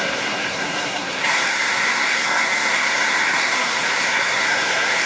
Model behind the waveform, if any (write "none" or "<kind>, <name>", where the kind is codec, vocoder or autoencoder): codec, SNAC